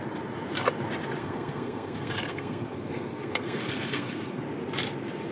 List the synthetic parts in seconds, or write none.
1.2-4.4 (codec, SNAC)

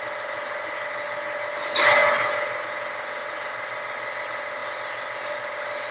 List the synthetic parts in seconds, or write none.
none

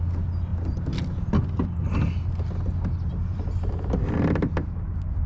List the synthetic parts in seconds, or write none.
none

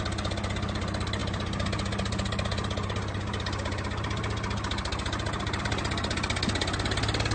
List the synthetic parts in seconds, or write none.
none

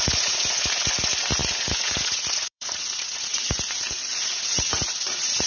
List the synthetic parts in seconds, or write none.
0.0-5.5 (vocoder, Vocos)

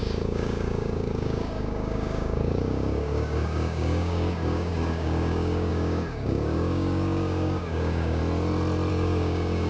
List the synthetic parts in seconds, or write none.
0.0-8.2 (codec, DAC); 8.9-9.7